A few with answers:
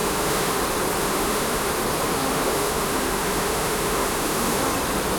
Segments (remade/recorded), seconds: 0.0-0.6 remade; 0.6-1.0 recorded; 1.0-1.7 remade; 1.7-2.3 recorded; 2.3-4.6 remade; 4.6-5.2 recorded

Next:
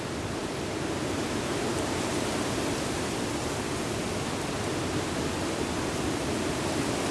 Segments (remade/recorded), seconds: 0.0-7.1 recorded

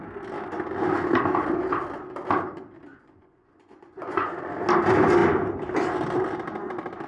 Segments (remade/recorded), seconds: 0.0-2.9 recorded; 2.9-4.3 remade; 4.3-7.1 recorded

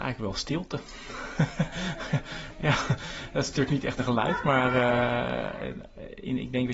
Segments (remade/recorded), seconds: 0.0-2.6 recorded; 2.6-4.0 remade; 4.0-4.9 recorded; 4.9-5.6 remade; 5.6-6.7 recorded

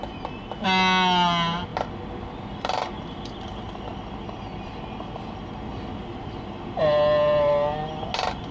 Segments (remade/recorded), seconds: 0.0-8.5 recorded

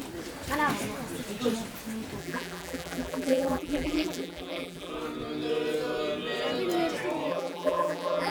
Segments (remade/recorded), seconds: 0.0-2.2 recorded; 2.2-4.9 remade; 4.9-7.3 recorded; 7.3-8.3 remade